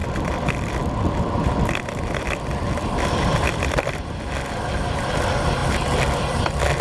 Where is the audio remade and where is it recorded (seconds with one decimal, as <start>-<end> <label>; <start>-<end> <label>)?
0.0-4.1 remade; 4.1-6.8 recorded